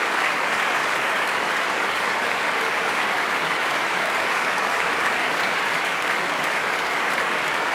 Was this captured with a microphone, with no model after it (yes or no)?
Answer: no